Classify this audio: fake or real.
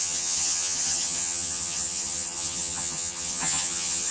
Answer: fake